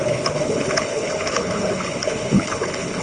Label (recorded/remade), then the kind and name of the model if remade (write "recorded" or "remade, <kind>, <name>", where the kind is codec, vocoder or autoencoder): remade, codec, HILCodec